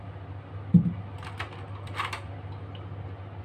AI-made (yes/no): no